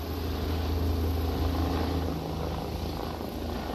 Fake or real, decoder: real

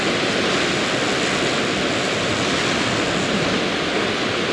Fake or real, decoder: real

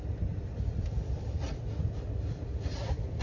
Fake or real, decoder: real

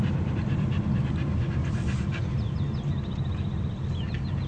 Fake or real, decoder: real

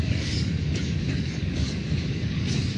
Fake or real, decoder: fake, codec, DAC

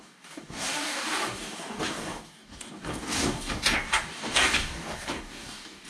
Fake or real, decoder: fake, codec, DAC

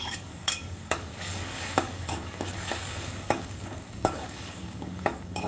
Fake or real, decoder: fake, codec, DAC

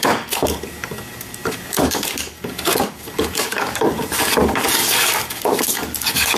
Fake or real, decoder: fake, codec, DAC